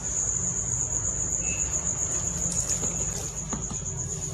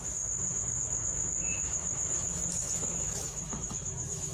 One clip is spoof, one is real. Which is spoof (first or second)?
second